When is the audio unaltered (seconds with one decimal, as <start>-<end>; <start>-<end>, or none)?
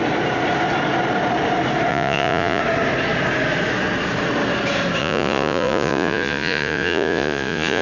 0.0-1.9; 2.6-5.0